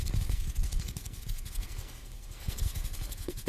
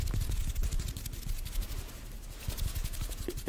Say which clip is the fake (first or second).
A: first